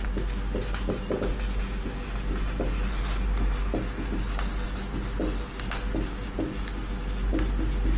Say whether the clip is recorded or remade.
recorded